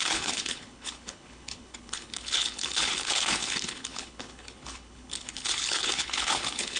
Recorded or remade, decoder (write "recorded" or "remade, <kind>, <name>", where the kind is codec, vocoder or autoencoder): remade, codec, HILCodec